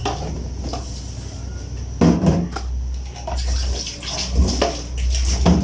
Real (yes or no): yes